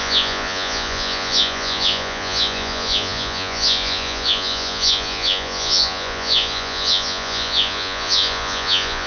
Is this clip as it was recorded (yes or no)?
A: no